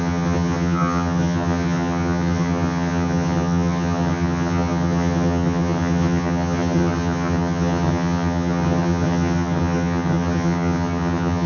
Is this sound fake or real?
fake